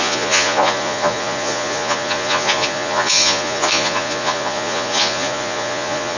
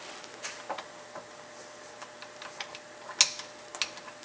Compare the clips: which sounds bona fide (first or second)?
second